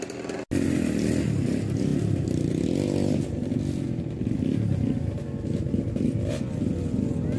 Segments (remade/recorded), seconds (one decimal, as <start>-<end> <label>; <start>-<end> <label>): 0.0-7.4 recorded